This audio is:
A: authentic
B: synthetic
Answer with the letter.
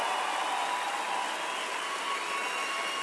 A